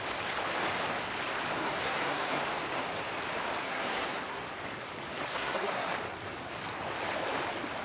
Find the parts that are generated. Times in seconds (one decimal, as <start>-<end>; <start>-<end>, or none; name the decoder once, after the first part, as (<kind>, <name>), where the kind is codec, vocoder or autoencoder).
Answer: 1.6-2.4 (codec, SNAC); 3.6-4.4; 5.3-5.9